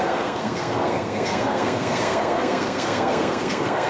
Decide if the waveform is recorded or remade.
remade